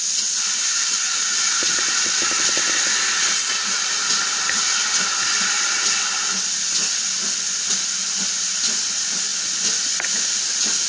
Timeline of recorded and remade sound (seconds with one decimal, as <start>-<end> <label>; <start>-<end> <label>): 0.0-10.9 recorded